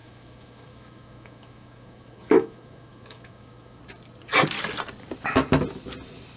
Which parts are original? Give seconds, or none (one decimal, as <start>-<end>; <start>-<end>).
3.8-6.4